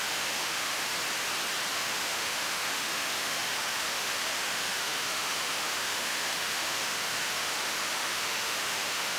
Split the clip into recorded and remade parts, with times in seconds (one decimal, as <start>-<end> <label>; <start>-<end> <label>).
0.0-0.9 remade; 0.9-1.7 recorded; 1.7-9.2 remade